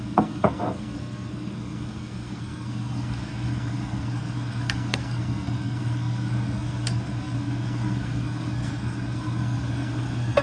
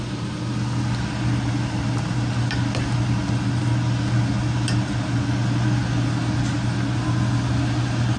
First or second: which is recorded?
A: second